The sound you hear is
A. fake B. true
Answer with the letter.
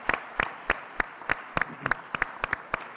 B